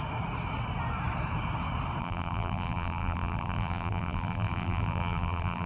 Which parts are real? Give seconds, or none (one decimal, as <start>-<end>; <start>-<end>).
0.0-2.0